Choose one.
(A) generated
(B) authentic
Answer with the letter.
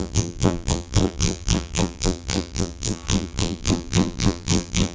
A